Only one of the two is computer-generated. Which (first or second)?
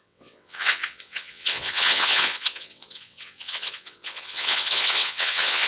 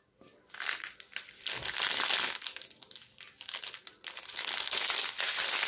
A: first